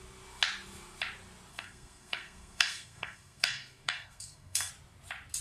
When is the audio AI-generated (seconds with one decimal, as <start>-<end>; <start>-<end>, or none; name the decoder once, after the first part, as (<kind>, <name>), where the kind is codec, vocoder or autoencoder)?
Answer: 1.5-4.7 (codec, SNAC)